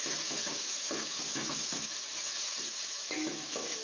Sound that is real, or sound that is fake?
fake